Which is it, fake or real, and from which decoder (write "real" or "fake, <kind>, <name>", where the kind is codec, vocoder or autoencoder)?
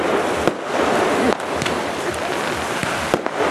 real